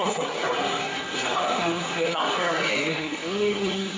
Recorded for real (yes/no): no